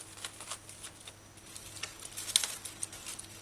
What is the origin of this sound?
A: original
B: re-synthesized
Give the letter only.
A